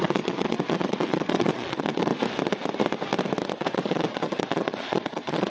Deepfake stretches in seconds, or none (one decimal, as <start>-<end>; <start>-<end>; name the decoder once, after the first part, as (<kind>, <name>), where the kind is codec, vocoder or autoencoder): 0.0-2.1 (vocoder, Vocos); 3.5-5.5